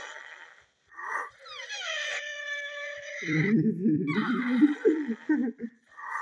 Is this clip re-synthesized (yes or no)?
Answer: yes